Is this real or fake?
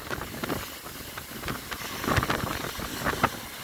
real